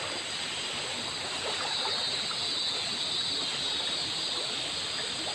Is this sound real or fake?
real